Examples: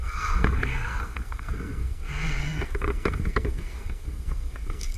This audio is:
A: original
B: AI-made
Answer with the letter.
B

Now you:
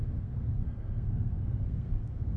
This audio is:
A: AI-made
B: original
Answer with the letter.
A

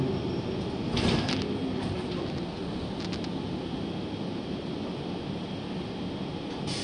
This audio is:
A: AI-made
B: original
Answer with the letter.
B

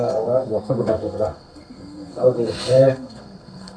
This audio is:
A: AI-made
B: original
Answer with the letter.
A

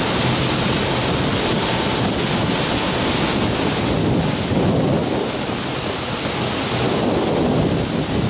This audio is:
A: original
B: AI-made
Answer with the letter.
A